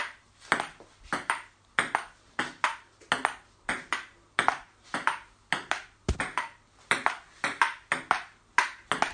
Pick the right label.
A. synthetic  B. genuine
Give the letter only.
B